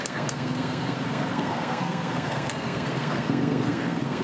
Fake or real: fake